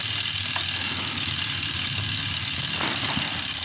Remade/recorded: recorded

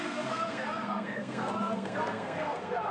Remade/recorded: remade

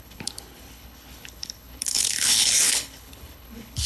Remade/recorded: remade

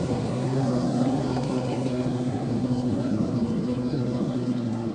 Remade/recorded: remade